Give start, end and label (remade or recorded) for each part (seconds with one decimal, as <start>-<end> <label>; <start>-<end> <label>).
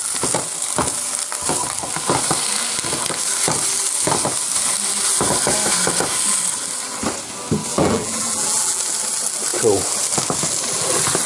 0.0-7.7 recorded; 7.7-8.8 remade; 8.8-11.3 recorded